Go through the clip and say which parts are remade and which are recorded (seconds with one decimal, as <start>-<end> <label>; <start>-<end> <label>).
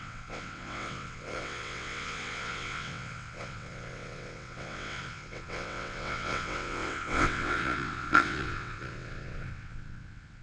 0.0-10.4 remade